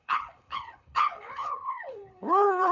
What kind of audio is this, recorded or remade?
remade